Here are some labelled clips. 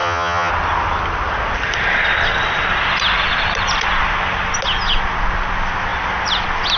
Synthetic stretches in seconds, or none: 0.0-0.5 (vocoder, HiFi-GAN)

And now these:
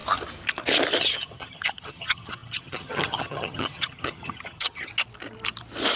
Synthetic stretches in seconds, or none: 1.0-4.9 (vocoder, HiFi-GAN)